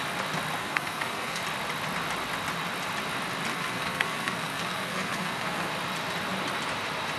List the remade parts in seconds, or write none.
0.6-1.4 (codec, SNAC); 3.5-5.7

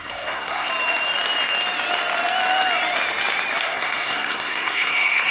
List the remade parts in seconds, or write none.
0.0-0.7 (codec, SNAC); 3.6-5.3